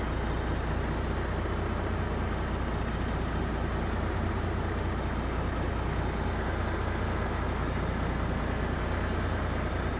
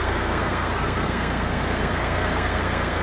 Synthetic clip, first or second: second